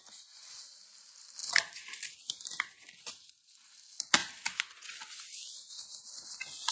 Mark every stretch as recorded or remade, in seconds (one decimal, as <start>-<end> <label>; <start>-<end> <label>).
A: 0.0-6.7 recorded